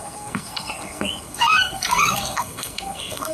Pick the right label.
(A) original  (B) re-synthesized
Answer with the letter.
B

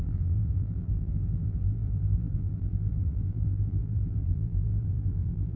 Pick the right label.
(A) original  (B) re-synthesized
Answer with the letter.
B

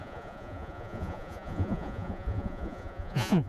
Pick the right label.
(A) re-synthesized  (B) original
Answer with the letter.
A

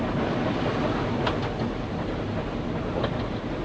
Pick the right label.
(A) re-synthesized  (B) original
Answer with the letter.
B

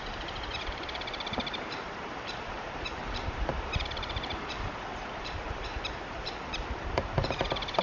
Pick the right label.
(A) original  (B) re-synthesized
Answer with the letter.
B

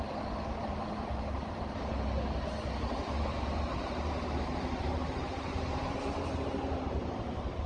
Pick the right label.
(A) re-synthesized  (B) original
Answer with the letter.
A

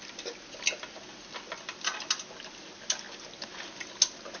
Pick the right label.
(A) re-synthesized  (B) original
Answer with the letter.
B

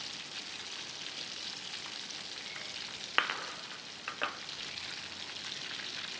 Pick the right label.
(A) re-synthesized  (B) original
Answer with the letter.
B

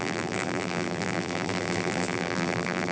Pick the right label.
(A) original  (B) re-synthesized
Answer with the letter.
B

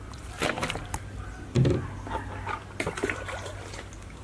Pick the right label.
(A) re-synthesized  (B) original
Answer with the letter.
B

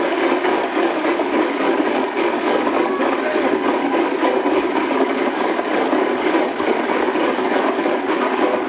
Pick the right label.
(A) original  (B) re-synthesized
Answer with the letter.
B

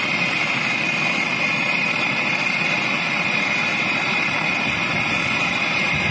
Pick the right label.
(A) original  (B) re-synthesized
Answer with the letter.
A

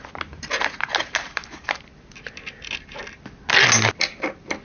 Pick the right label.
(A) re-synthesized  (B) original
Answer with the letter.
B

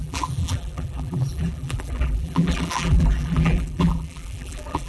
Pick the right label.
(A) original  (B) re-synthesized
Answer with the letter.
B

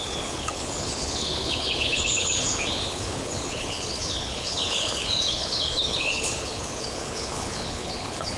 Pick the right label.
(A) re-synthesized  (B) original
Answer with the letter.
A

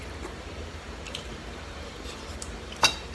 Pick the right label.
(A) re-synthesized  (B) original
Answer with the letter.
A